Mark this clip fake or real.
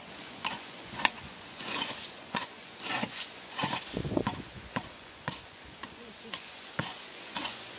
fake